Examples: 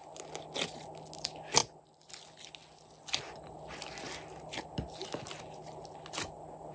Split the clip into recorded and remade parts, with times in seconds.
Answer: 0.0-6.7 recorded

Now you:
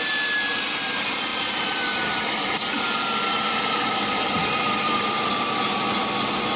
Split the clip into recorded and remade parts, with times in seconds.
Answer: 0.0-1.3 recorded; 1.3-5.3 remade; 5.3-6.6 recorded

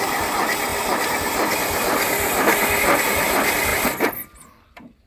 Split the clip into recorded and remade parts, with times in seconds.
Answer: 0.0-0.7 remade; 0.7-3.0 recorded; 3.0-3.7 remade; 3.7-4.5 recorded; 4.5-5.1 remade

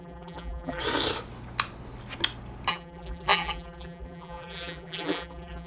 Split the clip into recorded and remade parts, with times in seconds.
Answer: 0.0-0.8 remade; 0.8-2.7 recorded; 2.7-5.7 remade

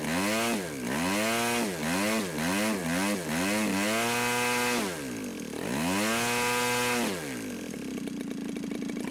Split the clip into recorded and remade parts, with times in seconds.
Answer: 0.0-9.1 recorded

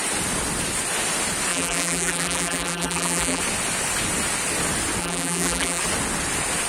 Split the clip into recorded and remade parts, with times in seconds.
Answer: 0.0-1.5 recorded; 1.5-3.4 remade; 3.4-5.0 recorded; 5.0-5.8 remade; 5.8-6.7 recorded

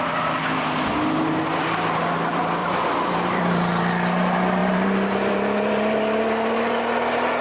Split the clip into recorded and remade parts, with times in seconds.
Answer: 0.0-2.6 recorded; 2.6-3.4 remade; 3.4-4.6 recorded; 4.6-6.7 remade; 6.7-7.4 recorded

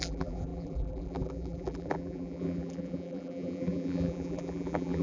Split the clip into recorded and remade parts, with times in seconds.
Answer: 0.0-5.0 remade